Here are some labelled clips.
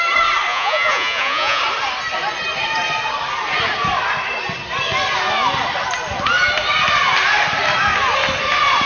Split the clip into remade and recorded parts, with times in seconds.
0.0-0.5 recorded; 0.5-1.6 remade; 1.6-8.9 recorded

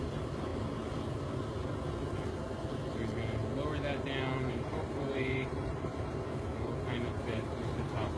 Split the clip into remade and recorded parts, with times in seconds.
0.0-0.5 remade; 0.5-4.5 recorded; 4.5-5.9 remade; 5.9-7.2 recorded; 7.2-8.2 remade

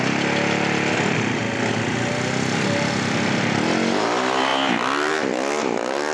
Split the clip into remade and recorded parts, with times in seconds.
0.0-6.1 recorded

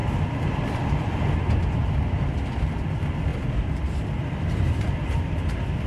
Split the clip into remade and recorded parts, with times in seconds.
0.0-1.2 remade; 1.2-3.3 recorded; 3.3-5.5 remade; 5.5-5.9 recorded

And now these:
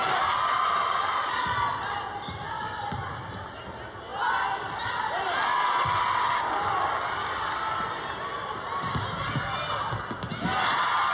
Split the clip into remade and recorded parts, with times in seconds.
0.0-3.6 remade; 3.6-11.1 recorded